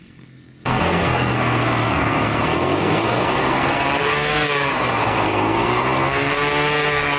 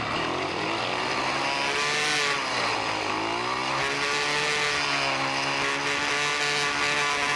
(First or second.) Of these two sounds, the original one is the second